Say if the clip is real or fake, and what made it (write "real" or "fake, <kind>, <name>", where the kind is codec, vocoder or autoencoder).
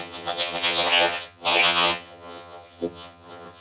fake, vocoder, HiFi-GAN